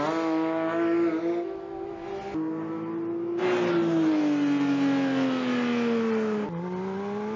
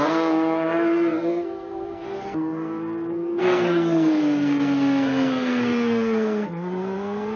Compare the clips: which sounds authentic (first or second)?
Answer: first